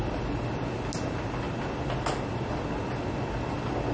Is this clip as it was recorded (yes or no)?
yes